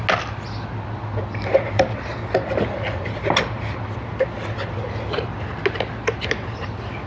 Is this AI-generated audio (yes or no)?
no